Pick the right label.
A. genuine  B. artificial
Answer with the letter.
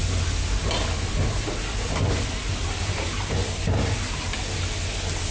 A